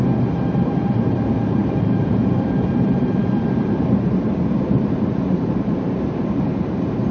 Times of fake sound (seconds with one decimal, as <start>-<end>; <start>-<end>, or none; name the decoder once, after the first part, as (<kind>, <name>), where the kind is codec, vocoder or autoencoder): 0.0-7.1 (vocoder, BigVGAN v2)